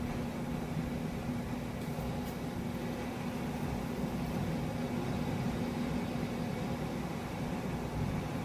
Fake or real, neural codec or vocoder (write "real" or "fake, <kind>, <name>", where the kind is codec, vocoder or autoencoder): real